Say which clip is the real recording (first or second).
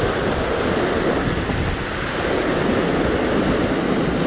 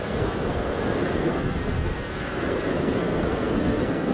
first